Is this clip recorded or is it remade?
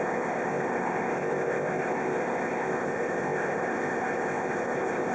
remade